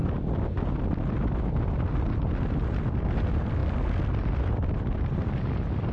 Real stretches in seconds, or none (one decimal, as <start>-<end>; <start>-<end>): 0.0-5.9

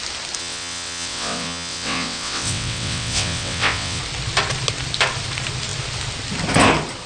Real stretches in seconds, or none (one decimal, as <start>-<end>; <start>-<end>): 0.0-0.4; 4.0-7.1

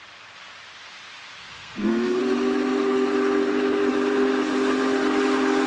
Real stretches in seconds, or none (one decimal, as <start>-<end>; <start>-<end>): 0.0-1.5; 2.2-5.7

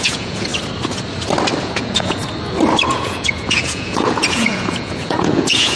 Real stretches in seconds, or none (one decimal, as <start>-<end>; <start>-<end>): 0.5-1.6; 2.2-2.9

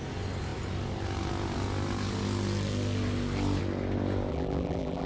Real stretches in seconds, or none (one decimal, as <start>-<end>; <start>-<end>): 0.0-4.3

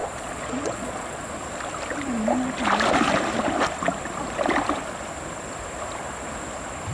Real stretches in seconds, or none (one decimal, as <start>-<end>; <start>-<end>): 1.3-6.9

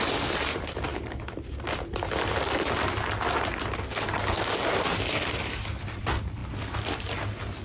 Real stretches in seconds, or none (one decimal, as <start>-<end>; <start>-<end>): 0.0-6.4; 7.0-7.6

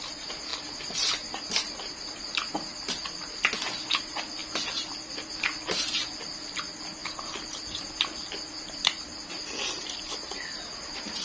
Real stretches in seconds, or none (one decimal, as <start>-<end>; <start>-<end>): 0.0-11.2